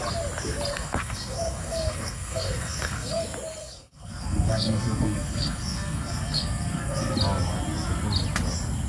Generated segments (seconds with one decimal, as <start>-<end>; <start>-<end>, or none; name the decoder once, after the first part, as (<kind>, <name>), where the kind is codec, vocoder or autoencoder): 0.7-3.2 (codec, SNAC); 3.6-7.0